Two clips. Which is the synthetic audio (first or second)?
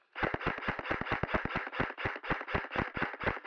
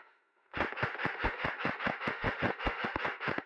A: second